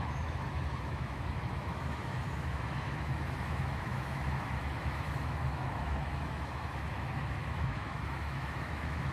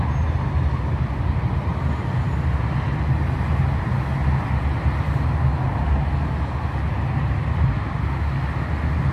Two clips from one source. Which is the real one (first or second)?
second